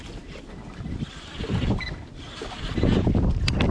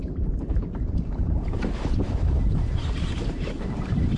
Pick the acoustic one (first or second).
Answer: first